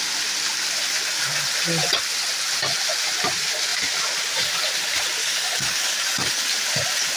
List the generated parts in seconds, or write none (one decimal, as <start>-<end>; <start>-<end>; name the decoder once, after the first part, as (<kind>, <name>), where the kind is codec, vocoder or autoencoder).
5.2-6.4 (codec, DAC)